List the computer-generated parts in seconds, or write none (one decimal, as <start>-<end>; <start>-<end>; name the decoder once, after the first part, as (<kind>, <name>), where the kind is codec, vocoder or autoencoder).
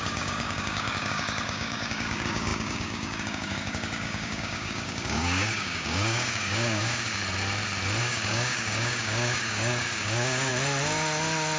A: 0.0-7.2 (codec, DAC); 8.0-10.5